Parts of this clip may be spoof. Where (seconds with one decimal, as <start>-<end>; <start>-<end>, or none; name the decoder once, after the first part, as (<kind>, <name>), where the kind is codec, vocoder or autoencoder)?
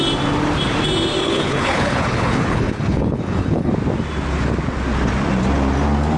1.2-3.7 (codec, HILCodec)